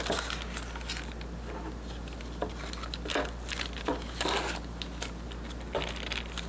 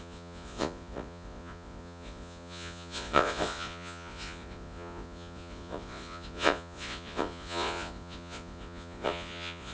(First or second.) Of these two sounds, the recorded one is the first